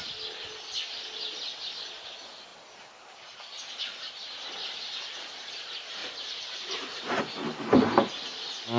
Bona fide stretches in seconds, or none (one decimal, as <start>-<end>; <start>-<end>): 0.0-6.0; 7.2-8.8